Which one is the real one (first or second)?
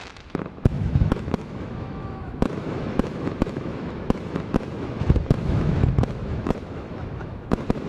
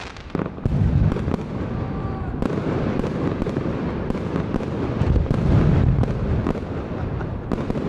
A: second